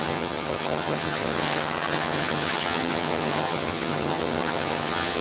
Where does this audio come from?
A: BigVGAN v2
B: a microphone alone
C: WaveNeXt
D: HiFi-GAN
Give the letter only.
D